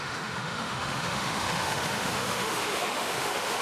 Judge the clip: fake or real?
fake